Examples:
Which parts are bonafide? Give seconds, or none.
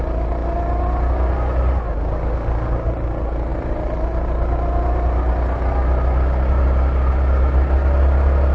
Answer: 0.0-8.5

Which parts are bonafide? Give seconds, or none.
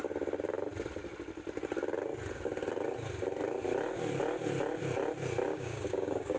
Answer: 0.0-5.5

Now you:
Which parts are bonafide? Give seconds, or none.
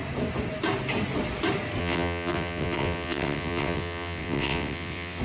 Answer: 0.0-1.8